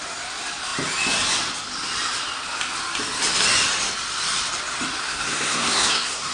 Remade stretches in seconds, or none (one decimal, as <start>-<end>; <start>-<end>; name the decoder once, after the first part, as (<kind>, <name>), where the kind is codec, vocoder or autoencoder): 5.0-6.3 (codec, SNAC)